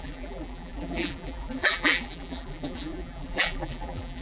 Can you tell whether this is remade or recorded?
remade